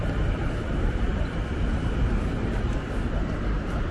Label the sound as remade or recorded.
remade